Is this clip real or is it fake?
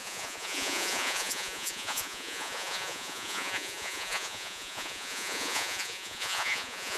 fake